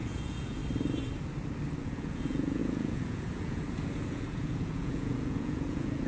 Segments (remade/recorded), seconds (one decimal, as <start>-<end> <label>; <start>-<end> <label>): 0.0-0.6 remade; 0.6-1.8 recorded; 1.8-6.1 remade